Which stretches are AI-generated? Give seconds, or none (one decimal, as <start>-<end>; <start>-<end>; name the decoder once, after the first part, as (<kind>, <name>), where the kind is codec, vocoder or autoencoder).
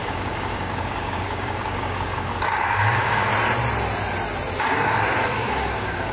0.0-3.3 (codec, DAC); 4.6-6.1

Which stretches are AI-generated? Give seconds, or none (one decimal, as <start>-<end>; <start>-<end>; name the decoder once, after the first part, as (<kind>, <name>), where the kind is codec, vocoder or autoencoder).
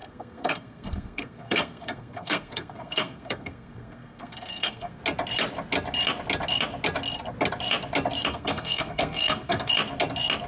0.0-5.0 (codec, SNAC); 8.3-9.7